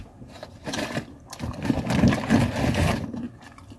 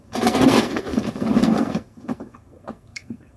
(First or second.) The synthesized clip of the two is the second